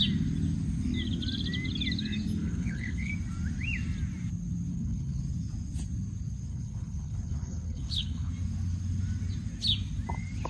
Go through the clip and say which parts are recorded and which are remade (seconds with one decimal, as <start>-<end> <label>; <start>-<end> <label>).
0.0-2.4 recorded; 2.4-3.1 remade; 3.1-4.7 recorded; 4.7-5.2 remade; 5.2-6.5 recorded; 6.5-8.3 remade; 8.3-10.5 recorded